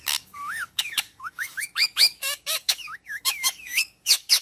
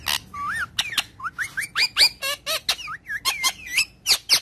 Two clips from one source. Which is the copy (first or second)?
first